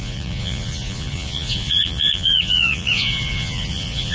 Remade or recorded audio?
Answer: remade